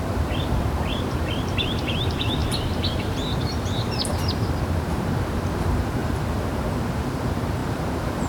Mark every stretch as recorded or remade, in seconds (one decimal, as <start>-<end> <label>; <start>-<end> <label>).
0.0-8.3 remade